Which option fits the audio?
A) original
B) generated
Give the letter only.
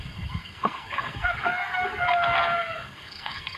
B